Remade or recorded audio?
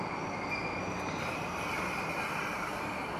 recorded